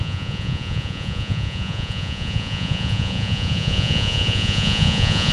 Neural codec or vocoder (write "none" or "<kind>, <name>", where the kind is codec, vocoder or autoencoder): vocoder, Vocos